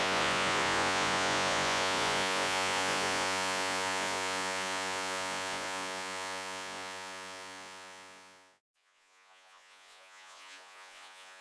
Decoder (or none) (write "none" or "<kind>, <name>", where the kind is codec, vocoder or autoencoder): vocoder, Vocos